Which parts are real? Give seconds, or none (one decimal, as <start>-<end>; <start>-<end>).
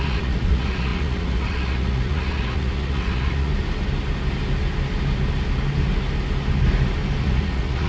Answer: 3.5-7.2